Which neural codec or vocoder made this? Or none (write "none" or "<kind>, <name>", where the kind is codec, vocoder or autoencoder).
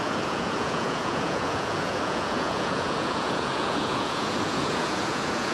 vocoder, Vocos